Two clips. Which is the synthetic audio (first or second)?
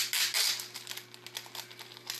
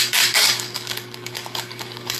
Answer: second